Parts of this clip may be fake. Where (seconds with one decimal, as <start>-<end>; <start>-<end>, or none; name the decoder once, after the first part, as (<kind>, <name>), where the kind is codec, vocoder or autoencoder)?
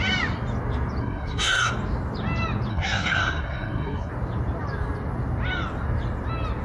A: 1.0-1.7 (codec, SNAC); 2.7-4.1